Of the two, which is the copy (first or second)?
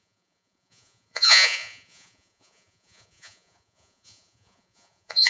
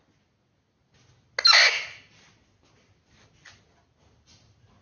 first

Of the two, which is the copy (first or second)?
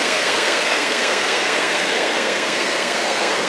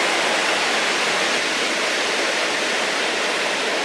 first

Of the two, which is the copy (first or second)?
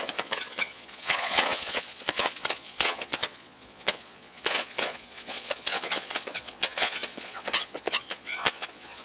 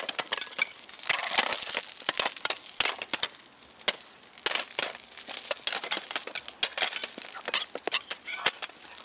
first